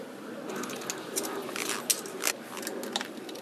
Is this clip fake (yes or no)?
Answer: no